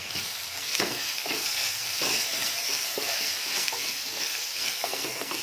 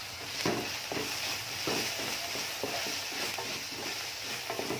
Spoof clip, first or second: first